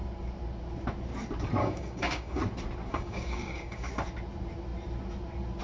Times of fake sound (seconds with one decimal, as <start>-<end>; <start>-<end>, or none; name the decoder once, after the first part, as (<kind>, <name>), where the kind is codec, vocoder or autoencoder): 1.6-2.4 (codec, DAC); 2.9-3.9